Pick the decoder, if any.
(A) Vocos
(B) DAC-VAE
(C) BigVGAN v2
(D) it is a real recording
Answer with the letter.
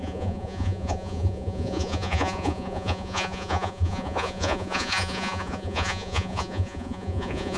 A